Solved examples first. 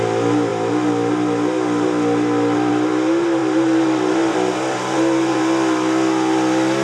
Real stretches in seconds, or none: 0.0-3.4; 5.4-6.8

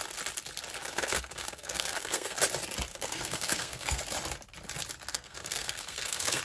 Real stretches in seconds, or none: 0.0-0.8; 2.4-2.9; 4.0-5.1

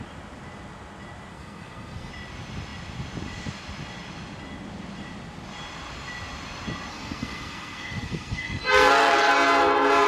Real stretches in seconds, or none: 0.0-1.3; 2.1-6.9; 9.3-10.1